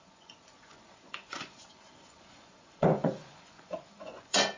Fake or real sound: fake